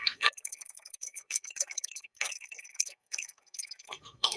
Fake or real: fake